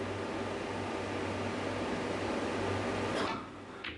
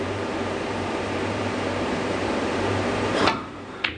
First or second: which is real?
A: first